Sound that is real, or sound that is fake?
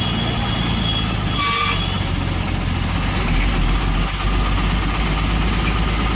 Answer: real